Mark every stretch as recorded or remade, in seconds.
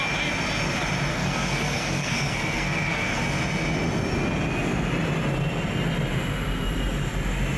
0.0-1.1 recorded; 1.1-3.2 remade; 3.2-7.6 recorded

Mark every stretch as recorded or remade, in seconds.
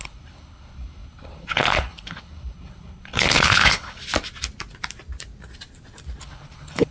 0.0-4.0 remade; 4.0-6.2 recorded; 6.2-6.9 remade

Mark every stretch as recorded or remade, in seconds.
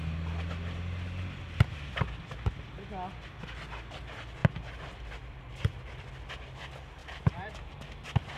0.0-7.0 recorded; 7.0-7.8 remade; 7.8-8.4 recorded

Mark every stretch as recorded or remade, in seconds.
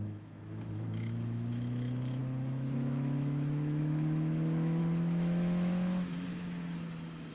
0.0-6.3 remade; 6.3-7.3 recorded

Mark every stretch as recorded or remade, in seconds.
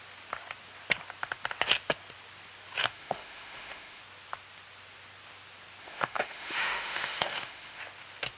0.0-2.8 recorded; 2.8-4.0 remade; 4.0-5.8 recorded; 5.8-7.8 remade; 7.8-8.4 recorded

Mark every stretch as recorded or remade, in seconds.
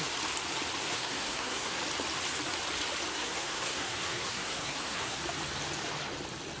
0.0-0.8 recorded; 0.8-1.8 remade; 1.8-3.1 recorded; 3.1-5.2 remade; 5.2-6.6 recorded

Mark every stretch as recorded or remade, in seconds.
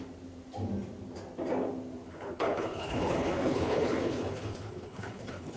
0.0-2.1 recorded; 2.1-5.6 remade